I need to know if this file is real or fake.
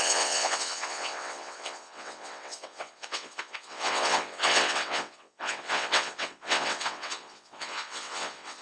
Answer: fake